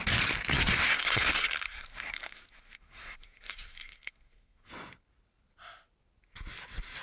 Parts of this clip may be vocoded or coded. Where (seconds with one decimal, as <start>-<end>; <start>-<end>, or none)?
0.5-4.7